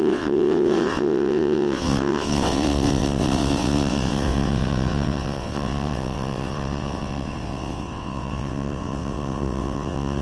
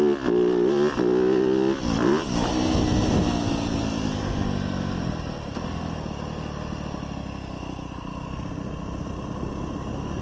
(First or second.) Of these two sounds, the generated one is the first